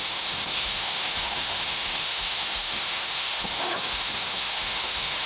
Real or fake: fake